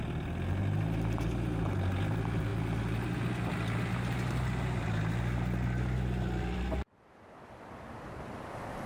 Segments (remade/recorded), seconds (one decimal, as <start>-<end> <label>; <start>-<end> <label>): 0.0-8.9 remade